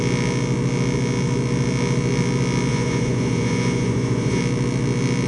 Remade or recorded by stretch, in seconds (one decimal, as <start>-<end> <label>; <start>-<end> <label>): 0.0-2.7 recorded; 2.7-4.4 remade; 4.4-5.3 recorded